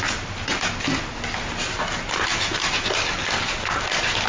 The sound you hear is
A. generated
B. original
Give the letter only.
B